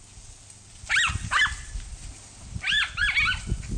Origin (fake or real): real